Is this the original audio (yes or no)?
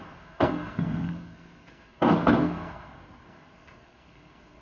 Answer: no